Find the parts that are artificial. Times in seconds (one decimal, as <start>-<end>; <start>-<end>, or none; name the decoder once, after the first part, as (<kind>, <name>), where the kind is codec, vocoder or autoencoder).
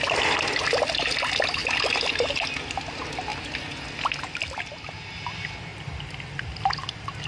none